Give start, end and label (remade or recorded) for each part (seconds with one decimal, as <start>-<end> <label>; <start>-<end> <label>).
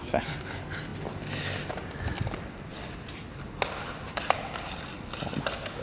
0.0-5.8 recorded